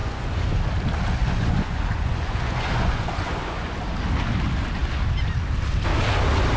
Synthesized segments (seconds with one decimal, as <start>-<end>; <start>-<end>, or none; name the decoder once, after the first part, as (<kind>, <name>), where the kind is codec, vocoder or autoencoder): 0.0-0.6 (vocoder, Vocos); 1.2-3.8